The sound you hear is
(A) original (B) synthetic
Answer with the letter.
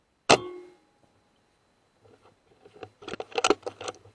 A